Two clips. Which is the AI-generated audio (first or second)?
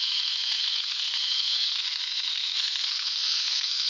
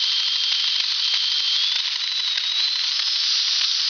first